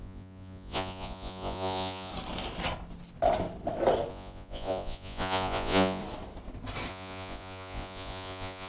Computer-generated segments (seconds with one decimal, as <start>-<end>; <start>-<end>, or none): 0.0-2.1; 4.1-6.0; 6.9-8.7